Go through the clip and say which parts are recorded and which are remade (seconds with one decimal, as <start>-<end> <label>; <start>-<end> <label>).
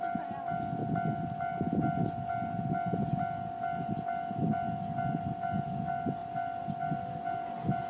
0.0-7.9 recorded